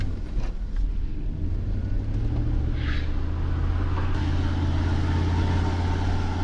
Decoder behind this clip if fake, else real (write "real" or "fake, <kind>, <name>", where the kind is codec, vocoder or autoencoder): real